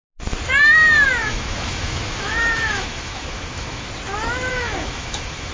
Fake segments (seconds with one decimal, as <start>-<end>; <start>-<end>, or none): 1.2-3.9; 4.5-5.5